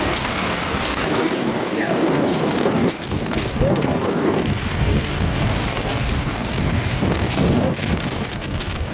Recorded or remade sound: remade